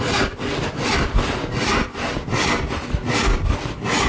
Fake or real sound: real